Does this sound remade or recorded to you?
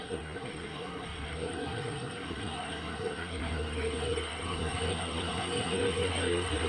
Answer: remade